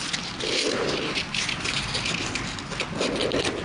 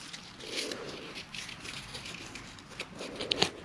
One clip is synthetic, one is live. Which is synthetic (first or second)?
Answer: second